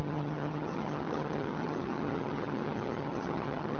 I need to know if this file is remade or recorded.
remade